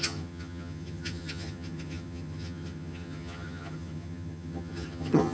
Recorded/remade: remade